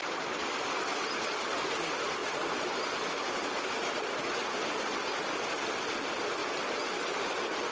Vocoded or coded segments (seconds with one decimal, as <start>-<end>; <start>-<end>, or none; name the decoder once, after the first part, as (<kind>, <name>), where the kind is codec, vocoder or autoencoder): none